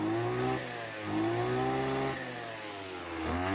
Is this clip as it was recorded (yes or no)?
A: yes